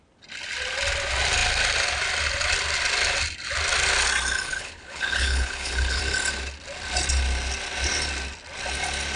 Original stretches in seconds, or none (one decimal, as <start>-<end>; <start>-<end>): 0.0-4.5; 6.0-9.2